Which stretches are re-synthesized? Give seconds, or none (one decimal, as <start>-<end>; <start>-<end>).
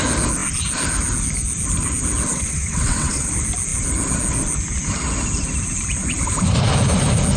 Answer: 2.3-3.3